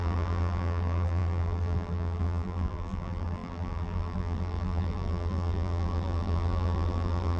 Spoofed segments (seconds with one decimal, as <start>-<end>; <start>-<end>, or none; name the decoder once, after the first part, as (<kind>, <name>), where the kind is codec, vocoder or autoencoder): 0.0-7.4 (vocoder, BigVGAN v2)